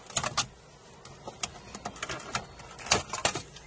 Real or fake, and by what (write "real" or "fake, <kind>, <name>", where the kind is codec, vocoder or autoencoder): real